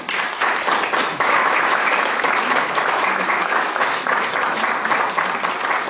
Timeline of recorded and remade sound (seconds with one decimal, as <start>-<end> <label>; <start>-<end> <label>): 0.0-1.1 recorded; 1.1-4.6 remade; 4.6-5.9 recorded